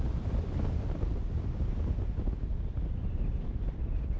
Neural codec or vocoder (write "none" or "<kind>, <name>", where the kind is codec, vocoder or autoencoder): none